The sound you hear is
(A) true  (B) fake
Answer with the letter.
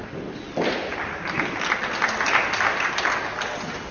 A